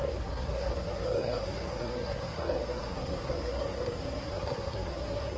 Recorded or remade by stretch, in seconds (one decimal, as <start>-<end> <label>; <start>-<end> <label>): 0.0-5.4 remade